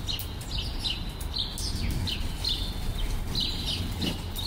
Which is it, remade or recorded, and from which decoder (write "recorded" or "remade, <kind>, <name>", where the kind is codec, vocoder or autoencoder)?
recorded